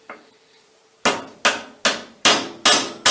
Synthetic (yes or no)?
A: no